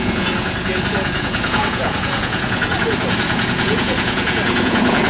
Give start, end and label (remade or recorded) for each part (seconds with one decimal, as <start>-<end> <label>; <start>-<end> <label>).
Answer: 0.0-5.1 remade